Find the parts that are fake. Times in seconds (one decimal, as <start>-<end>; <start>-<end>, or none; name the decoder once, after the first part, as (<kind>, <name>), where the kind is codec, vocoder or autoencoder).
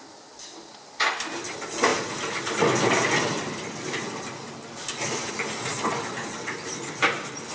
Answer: none